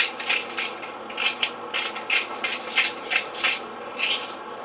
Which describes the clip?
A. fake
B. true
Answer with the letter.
B